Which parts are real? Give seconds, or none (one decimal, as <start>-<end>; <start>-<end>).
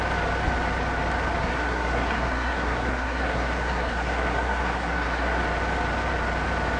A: 0.0-1.4; 5.4-6.8